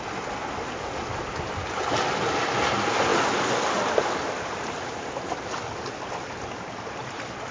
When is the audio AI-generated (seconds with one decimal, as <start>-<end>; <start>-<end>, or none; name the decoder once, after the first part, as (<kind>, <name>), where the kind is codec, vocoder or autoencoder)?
none